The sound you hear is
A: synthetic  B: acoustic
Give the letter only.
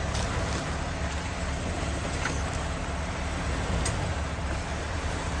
B